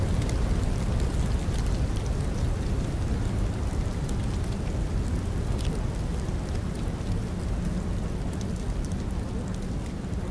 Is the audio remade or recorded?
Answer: recorded